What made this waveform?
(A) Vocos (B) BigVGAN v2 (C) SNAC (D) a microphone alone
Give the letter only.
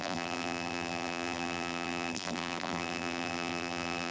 B